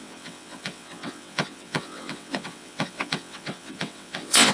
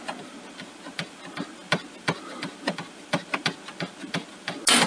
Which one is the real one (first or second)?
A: second